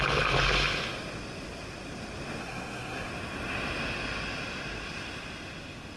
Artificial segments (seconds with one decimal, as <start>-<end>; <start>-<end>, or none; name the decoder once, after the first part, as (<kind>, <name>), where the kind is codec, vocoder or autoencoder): 2.4-3.1 (codec, SNAC)